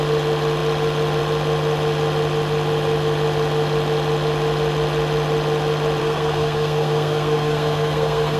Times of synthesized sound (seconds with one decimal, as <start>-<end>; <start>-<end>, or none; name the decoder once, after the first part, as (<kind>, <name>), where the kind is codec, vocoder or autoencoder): 6.0-8.4 (codec, SNAC)